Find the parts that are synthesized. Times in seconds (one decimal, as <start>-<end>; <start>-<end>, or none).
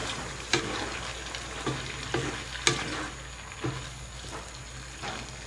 0.0-0.6